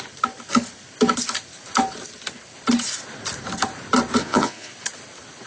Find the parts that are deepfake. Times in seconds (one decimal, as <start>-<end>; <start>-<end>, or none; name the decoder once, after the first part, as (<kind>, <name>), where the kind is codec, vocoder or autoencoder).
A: 4.2-4.7 (vocoder, Vocos)